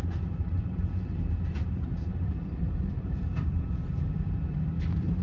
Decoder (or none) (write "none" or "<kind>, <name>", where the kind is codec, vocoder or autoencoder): vocoder, BigVGAN v2